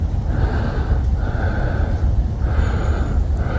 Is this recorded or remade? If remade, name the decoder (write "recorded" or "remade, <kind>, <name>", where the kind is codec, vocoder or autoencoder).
recorded